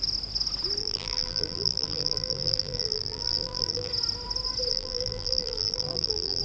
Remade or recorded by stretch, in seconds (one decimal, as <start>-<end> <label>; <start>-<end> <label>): 0.0-0.8 recorded; 0.8-3.9 remade; 3.9-4.7 recorded; 4.7-6.4 remade